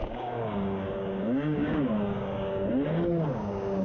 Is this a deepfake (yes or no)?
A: yes